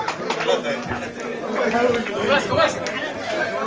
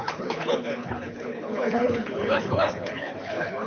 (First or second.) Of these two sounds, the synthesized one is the second